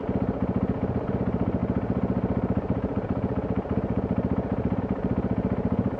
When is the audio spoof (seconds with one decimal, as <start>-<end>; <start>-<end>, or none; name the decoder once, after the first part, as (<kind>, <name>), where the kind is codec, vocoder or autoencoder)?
1.1-6.0 (vocoder, BigVGAN v2)